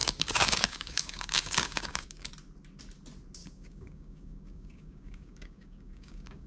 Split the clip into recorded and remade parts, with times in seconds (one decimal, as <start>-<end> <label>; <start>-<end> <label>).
0.0-2.3 remade; 2.3-3.4 recorded; 3.4-6.5 remade